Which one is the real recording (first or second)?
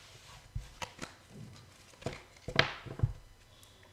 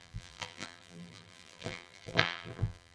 first